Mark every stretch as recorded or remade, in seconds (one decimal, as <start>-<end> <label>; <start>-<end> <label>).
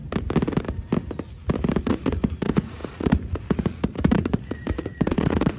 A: 0.0-1.8 recorded; 1.8-5.6 remade